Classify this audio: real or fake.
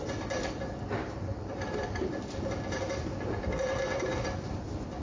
fake